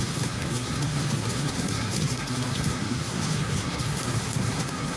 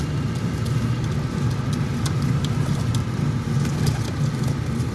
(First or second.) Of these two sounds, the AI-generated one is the first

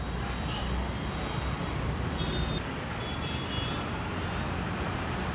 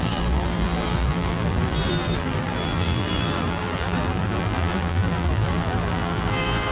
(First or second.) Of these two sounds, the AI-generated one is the second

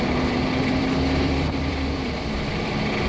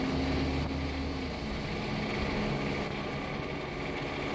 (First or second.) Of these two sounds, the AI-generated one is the first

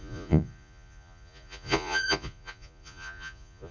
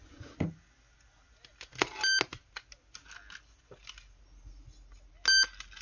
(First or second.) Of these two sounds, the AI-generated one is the first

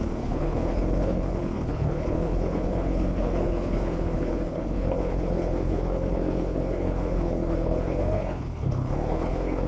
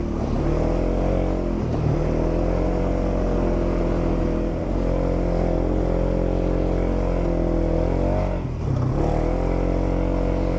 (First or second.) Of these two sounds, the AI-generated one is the first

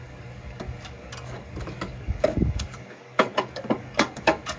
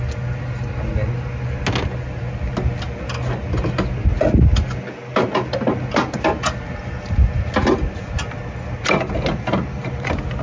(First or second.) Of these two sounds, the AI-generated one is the first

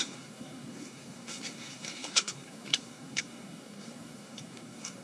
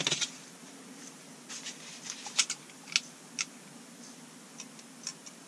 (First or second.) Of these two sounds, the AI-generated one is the first